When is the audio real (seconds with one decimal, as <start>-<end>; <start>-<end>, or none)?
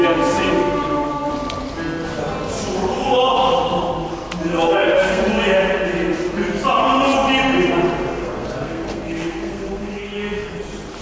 0.0-0.6; 1.3-4.5; 5.2-8.2; 10.6-11.0